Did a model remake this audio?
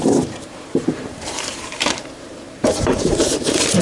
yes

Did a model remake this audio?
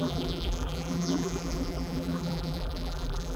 yes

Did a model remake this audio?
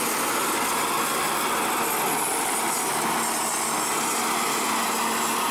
no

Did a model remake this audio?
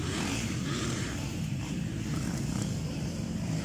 yes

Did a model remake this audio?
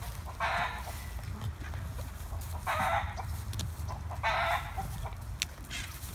no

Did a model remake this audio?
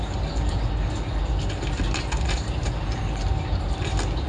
no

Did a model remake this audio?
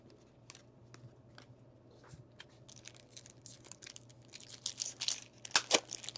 no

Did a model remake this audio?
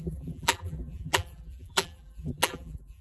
yes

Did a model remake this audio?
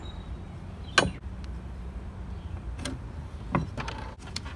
no